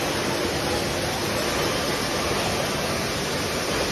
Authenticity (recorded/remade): recorded